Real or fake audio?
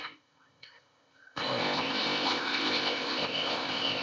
fake